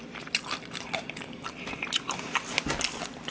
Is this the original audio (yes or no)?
no